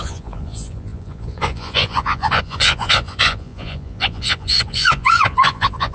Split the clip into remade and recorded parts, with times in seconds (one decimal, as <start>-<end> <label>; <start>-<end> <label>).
0.0-5.9 remade